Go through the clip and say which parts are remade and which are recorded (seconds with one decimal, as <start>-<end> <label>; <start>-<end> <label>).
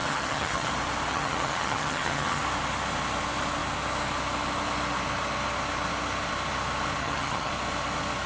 0.0-0.7 remade; 0.7-1.1 recorded; 1.1-2.4 remade; 2.4-7.0 recorded; 7.0-7.5 remade; 7.5-8.3 recorded